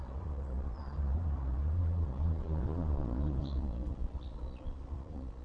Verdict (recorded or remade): remade